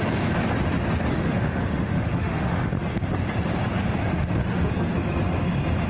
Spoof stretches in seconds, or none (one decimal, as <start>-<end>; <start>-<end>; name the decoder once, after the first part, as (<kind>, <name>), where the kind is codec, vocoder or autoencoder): 1.1-2.7 (autoencoder, DAC-VAE); 4.1-4.7